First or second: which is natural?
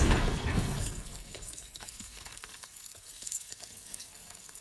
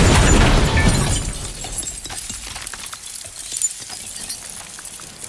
second